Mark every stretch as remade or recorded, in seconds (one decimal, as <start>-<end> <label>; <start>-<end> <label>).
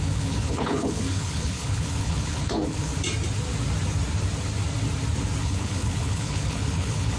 0.0-2.9 remade; 2.9-5.4 recorded; 5.4-7.2 remade